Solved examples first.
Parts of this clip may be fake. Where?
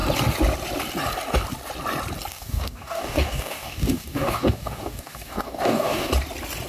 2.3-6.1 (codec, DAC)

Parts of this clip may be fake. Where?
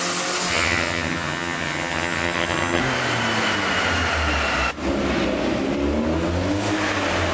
0.5-2.8 (vocoder, HiFi-GAN)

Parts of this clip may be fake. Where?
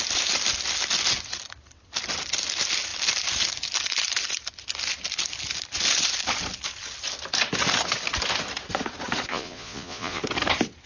9.3-10.2 (vocoder, Vocos)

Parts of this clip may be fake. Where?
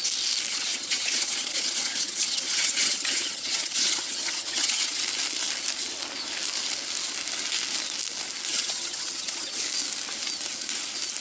0.5-5.0 (vocoder, HiFi-GAN); 8.5-9.6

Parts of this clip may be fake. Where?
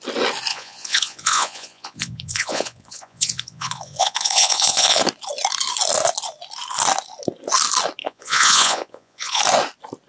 0.5-5.0 (vocoder, Vocos); 8.0-9.4